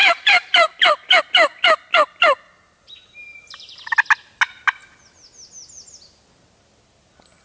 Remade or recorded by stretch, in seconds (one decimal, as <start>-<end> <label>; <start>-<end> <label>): 0.0-1.2 remade; 1.2-7.4 recorded